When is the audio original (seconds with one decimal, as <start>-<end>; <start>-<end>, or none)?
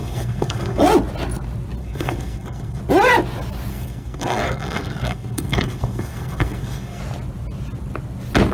0.8-1.8; 2.8-3.7; 7.0-8.5